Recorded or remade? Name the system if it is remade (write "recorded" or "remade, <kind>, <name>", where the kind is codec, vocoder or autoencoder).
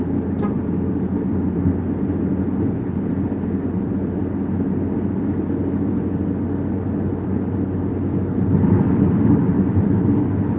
recorded